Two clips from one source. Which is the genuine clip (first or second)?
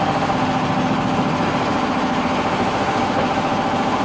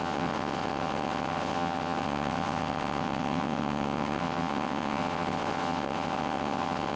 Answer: first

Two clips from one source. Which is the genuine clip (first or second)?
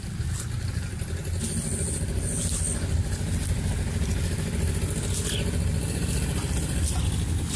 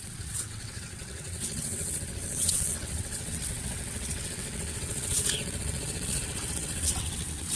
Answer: first